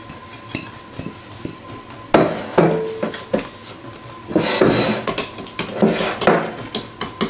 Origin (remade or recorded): recorded